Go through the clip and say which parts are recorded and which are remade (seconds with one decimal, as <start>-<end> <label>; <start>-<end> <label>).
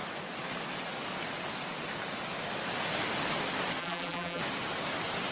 0.0-3.8 recorded; 3.8-4.4 remade; 4.4-5.3 recorded